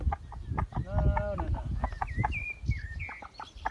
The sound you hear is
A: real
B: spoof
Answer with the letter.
A